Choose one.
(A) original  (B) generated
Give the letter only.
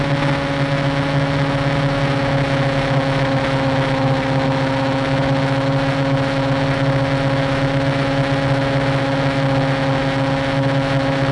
A